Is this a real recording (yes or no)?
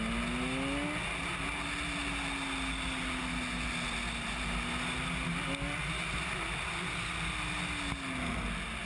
yes